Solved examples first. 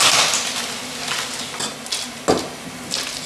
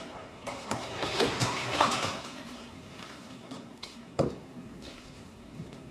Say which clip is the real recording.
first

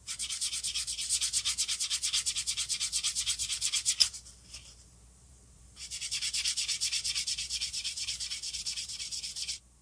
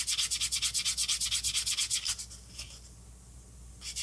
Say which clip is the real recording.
second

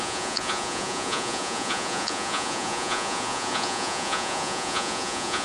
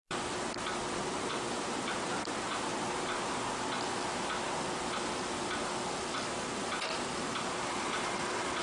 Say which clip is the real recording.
second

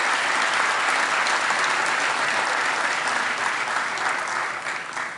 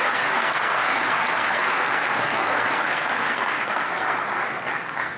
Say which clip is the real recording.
first